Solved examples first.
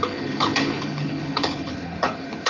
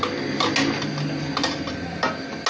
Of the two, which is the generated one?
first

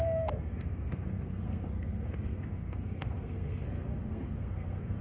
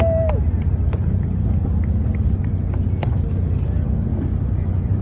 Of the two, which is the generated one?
first